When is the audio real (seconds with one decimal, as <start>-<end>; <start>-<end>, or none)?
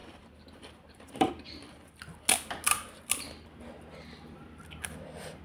1.3-5.4